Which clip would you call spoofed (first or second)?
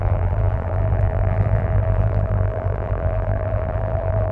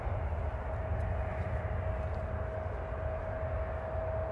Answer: first